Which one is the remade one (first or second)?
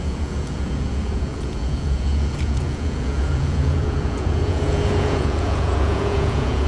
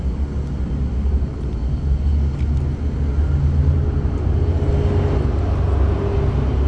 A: first